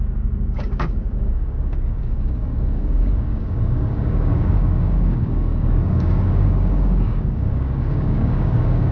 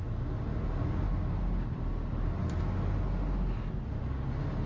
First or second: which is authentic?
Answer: second